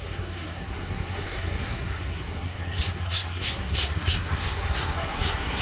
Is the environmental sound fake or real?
fake